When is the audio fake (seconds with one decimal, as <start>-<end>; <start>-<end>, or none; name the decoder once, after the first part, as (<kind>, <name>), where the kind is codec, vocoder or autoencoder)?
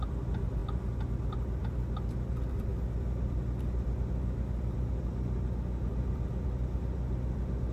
none